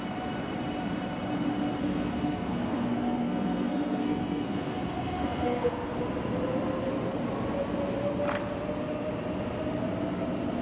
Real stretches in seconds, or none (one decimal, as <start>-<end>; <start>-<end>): 0.0-1.8; 6.0-10.6